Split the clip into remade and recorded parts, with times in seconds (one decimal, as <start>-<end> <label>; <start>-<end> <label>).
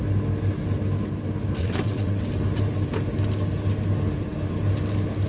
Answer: 0.0-1.6 recorded; 1.6-2.2 remade; 2.2-5.3 recorded